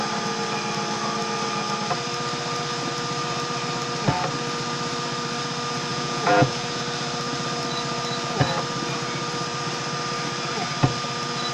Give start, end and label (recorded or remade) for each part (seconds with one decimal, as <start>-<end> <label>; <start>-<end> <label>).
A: 0.0-5.9 recorded; 5.9-6.8 remade; 6.8-11.5 recorded